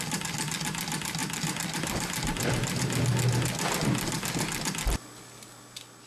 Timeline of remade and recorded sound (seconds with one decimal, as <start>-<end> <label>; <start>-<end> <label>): 0.0-1.2 recorded; 1.2-2.8 remade; 2.8-6.1 recorded